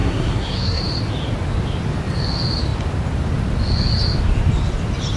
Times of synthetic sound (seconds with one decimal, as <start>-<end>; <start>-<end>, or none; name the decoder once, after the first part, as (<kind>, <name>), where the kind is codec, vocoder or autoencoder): 0.0-0.8 (codec, SNAC)